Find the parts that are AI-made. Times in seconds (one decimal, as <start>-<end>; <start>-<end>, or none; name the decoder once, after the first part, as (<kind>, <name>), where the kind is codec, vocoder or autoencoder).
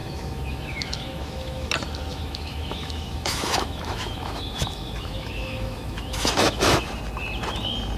0.0-1.7 (autoencoder, DAC-VAE); 2.1-6.9